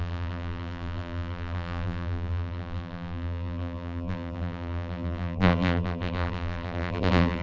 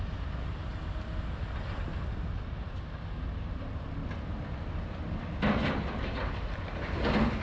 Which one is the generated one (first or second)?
first